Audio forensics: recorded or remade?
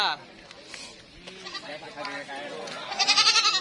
recorded